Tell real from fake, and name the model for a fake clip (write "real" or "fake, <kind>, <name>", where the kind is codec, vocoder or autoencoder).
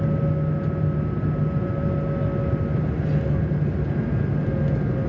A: real